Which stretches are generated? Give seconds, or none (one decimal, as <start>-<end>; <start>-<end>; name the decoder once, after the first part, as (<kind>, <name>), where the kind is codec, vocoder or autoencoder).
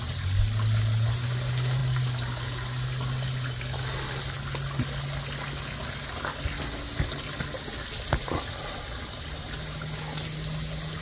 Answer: none